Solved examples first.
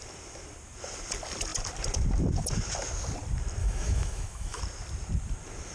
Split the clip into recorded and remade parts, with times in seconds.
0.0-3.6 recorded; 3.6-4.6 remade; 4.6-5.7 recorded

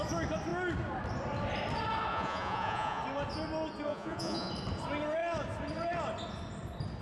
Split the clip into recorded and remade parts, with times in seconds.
0.0-2.1 recorded; 2.1-3.0 remade; 3.0-3.9 recorded; 3.9-4.5 remade; 4.5-7.0 recorded

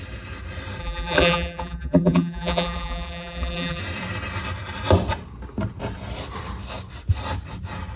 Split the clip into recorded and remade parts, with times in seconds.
0.0-0.8 recorded; 0.8-3.8 remade; 3.8-8.0 recorded

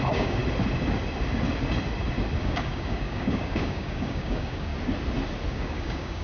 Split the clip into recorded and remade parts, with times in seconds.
0.0-0.4 remade; 0.4-2.4 recorded; 2.4-4.7 remade; 4.7-5.5 recorded; 5.5-6.2 remade

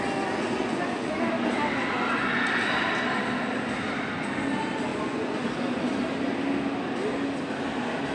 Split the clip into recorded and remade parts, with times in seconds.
0.0-0.6 recorded; 0.6-1.3 remade; 1.3-4.9 recorded; 4.9-5.5 remade; 5.5-8.1 recorded

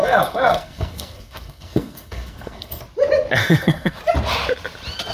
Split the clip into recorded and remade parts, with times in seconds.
0.0-2.8 remade; 2.8-3.4 recorded; 3.4-4.0 remade; 4.0-5.1 recorded

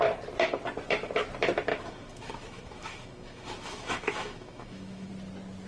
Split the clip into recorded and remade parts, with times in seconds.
0.0-1.7 recorded; 1.7-5.1 remade; 5.1-5.7 recorded